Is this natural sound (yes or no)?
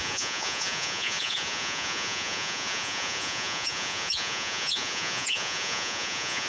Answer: no